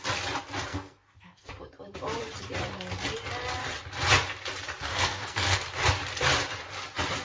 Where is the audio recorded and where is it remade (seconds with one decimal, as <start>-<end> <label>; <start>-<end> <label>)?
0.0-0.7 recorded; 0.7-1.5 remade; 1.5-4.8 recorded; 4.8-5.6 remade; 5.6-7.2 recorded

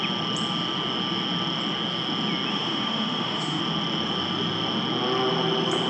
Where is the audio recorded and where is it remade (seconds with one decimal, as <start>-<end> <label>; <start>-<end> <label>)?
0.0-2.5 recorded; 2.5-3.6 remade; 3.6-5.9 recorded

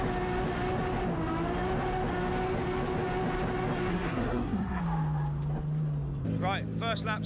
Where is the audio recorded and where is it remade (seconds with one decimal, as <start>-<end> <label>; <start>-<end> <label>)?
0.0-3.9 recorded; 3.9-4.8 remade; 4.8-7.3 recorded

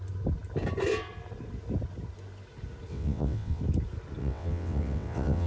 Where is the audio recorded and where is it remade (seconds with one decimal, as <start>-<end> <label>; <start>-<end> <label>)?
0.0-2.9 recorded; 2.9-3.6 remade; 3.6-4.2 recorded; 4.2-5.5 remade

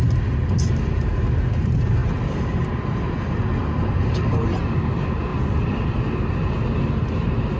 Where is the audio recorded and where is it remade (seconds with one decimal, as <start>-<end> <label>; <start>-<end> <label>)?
0.0-3.6 recorded; 3.6-4.6 remade; 4.6-5.3 recorded; 5.3-6.0 remade; 6.0-7.6 recorded

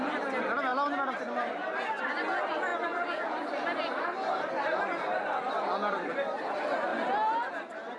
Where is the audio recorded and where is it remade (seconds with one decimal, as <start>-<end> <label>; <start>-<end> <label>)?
0.0-8.0 recorded

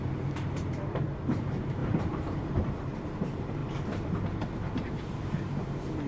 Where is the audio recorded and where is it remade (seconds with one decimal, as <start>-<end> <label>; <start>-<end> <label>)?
0.0-6.1 remade

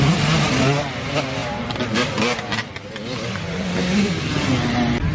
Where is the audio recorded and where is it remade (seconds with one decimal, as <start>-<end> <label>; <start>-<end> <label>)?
0.0-5.1 recorded